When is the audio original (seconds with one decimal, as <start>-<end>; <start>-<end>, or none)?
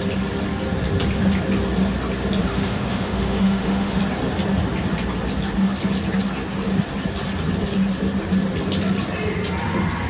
0.0-2.5; 4.0-10.1